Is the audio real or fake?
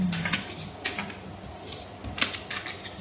real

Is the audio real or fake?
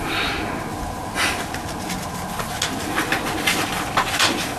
real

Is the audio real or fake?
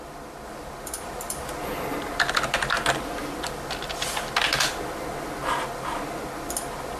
real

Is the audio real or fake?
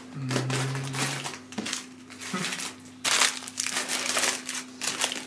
real